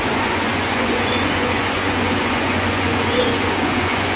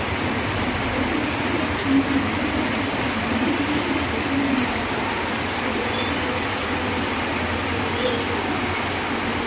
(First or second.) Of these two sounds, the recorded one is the second